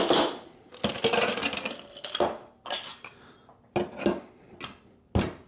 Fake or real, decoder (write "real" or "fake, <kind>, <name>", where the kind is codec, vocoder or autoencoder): real